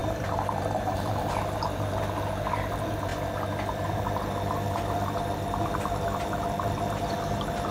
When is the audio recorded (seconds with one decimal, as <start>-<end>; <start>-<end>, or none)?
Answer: 1.1-7.7

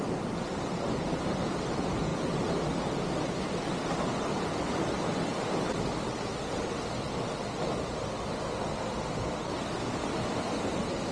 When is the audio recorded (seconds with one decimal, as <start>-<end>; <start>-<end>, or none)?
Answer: 0.0-11.1

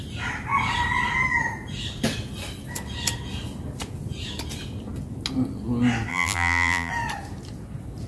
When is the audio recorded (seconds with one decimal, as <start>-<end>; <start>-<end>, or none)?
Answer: 0.0-6.1; 6.9-8.1

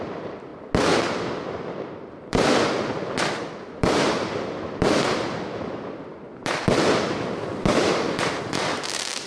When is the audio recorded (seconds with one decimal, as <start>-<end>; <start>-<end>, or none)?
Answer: 0.5-2.1

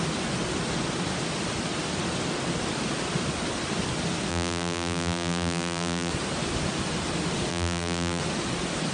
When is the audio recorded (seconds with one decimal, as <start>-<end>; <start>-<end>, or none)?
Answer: 0.0-4.3; 6.1-7.5; 8.2-8.9

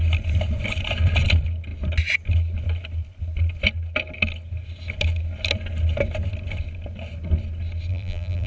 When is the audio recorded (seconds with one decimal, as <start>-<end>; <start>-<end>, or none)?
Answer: 0.0-7.9